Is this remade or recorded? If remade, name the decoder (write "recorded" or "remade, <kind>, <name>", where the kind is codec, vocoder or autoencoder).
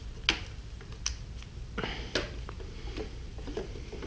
recorded